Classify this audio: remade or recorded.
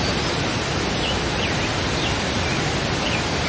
recorded